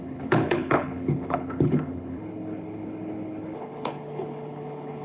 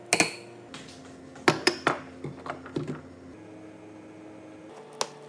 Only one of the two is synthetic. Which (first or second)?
first